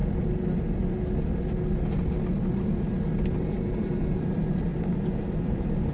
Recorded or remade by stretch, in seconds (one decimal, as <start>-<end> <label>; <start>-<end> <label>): 0.0-3.5 recorded; 3.5-4.7 remade; 4.7-5.4 recorded; 5.4-5.9 remade